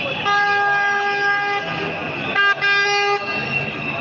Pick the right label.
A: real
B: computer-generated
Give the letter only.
A